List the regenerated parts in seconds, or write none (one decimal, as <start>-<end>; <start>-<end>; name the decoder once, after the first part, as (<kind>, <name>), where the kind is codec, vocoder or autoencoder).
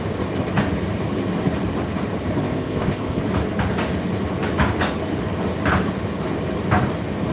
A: 2.4-3.2 (codec, ZipCodec)